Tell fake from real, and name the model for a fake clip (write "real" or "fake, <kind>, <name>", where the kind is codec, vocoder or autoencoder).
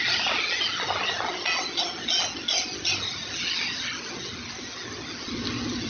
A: real